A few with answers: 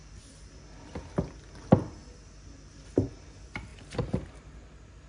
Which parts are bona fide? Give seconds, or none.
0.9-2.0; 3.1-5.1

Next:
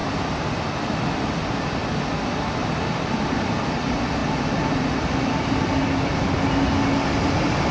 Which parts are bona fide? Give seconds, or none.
0.0-2.6; 3.5-7.7

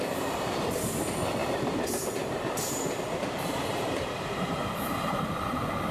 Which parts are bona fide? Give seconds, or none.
0.0-1.4; 4.9-5.9

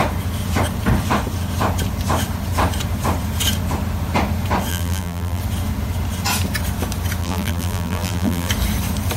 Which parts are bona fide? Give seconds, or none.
0.0-4.7; 5.4-7.2; 8.5-9.2